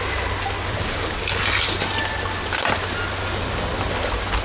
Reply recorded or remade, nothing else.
recorded